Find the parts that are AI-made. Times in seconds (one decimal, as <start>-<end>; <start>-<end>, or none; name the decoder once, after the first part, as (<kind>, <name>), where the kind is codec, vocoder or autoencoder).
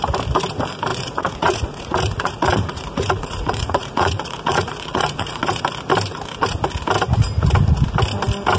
0.9-5.6 (vocoder, Vocos)